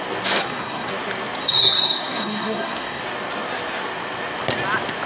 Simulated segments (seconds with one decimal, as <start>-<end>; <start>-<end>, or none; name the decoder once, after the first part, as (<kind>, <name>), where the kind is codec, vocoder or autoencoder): 0.4-0.9 (codec, SNAC); 1.4-3.0